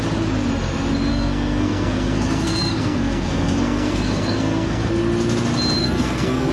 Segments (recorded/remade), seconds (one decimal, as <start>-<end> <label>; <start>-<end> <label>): 0.0-1.1 recorded; 1.1-4.9 remade; 4.9-5.8 recorded; 5.8-6.5 remade